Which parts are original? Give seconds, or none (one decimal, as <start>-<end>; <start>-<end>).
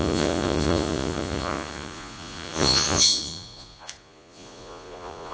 none